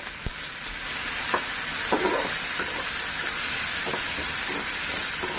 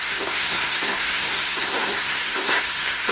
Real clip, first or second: first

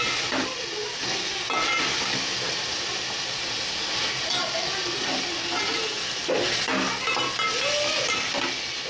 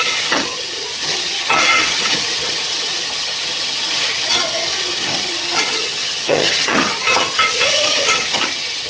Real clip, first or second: first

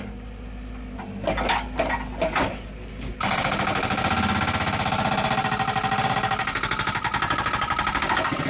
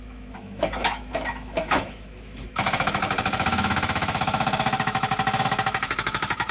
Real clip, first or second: first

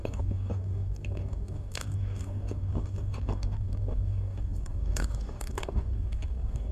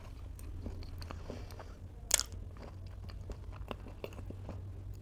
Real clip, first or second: second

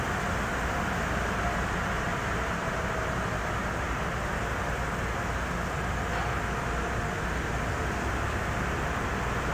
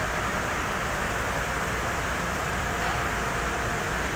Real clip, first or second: first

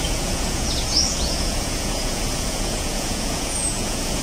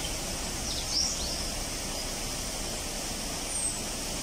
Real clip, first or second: second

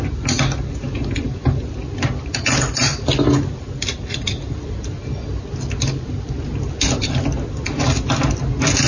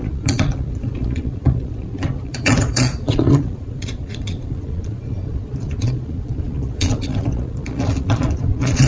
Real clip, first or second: first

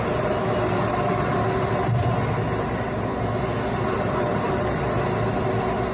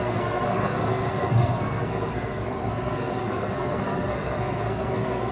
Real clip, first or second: first